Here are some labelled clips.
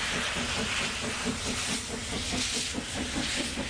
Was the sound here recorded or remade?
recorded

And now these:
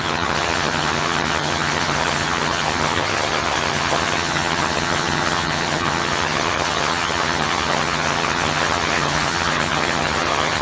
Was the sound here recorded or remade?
remade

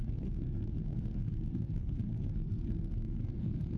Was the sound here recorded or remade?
remade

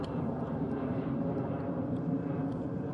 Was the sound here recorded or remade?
remade